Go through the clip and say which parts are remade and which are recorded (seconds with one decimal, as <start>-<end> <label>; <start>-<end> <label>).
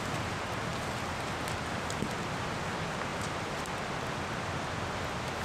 0.0-5.4 recorded